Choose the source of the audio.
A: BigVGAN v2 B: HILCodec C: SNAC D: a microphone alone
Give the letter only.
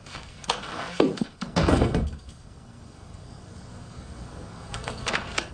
C